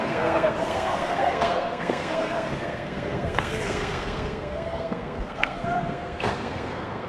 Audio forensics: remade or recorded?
remade